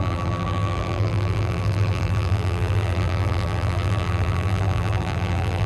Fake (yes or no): yes